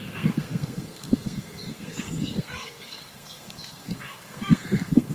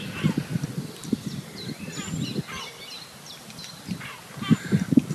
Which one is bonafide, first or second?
second